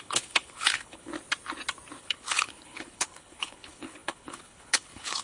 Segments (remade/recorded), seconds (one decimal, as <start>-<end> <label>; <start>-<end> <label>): 0.0-1.1 remade; 1.1-2.0 recorded; 2.0-5.2 remade

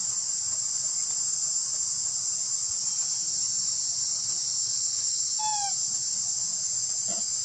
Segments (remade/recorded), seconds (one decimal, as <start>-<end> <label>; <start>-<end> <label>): 0.0-4.6 recorded; 4.6-5.4 remade; 5.4-7.4 recorded

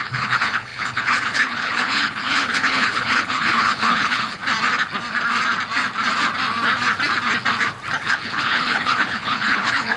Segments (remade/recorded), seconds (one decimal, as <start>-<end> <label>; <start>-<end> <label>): 0.0-4.4 remade; 4.4-8.0 recorded; 8.0-10.0 remade

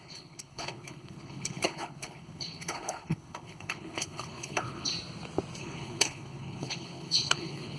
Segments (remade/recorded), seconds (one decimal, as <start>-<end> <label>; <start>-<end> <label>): 0.0-4.9 remade; 4.9-5.6 recorded; 5.6-7.8 remade

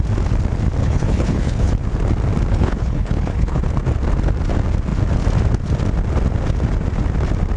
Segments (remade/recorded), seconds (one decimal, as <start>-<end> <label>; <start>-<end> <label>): 0.0-0.8 recorded; 0.8-1.7 remade; 1.7-2.5 recorded; 2.5-3.6 remade; 3.6-7.6 recorded

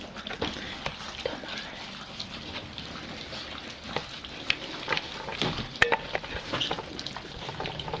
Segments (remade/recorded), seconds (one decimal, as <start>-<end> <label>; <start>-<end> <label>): 0.0-8.0 recorded

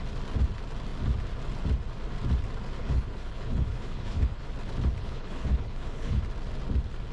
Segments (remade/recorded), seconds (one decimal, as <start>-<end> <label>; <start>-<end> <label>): 0.0-2.8 recorded; 2.8-4.5 remade; 4.5-5.0 recorded; 5.0-6.2 remade; 6.2-7.1 recorded